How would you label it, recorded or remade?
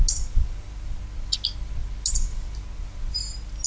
recorded